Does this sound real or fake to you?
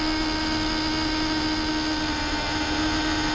real